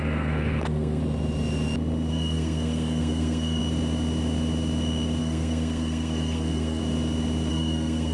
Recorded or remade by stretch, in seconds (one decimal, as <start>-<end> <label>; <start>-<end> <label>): 0.0-1.0 remade; 1.0-2.1 recorded; 2.1-3.6 remade; 3.6-5.2 recorded; 5.2-6.8 remade; 6.8-7.5 recorded; 7.5-8.1 remade